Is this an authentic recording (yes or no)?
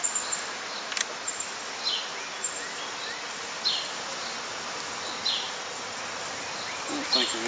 yes